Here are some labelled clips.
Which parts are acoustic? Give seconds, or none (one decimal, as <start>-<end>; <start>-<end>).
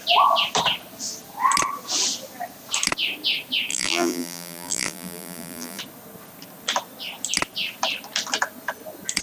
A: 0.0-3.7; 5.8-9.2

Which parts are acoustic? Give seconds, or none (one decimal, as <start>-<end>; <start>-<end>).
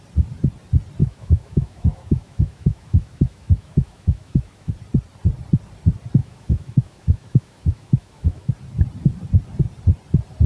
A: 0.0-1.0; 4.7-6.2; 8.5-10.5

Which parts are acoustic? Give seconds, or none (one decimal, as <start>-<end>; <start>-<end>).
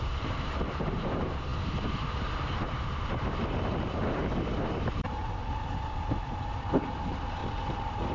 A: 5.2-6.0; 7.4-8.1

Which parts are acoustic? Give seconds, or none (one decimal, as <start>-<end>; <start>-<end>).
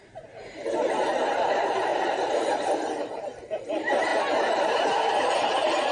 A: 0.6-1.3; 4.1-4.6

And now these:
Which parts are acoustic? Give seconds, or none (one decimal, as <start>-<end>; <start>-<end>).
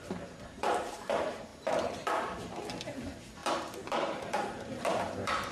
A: none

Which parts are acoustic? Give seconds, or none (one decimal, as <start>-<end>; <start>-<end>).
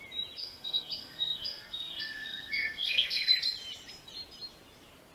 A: 0.0-0.4; 3.3-5.1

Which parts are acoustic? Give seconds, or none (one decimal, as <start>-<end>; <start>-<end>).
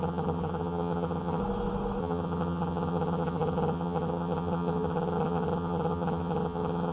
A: 1.4-2.0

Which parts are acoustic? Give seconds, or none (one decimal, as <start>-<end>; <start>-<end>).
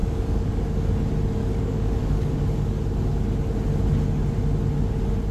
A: 0.6-1.4; 2.8-5.3